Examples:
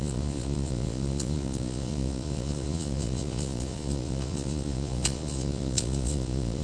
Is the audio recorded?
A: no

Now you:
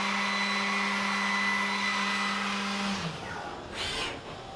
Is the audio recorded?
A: yes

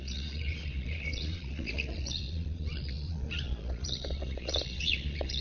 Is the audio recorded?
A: no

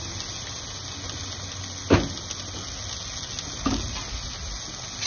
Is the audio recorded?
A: yes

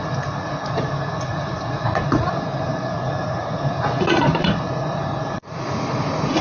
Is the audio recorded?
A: no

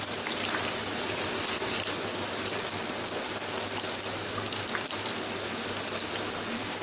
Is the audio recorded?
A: yes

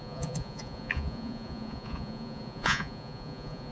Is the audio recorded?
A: no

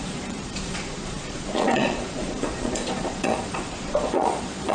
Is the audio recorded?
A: no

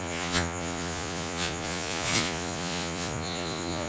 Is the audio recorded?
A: no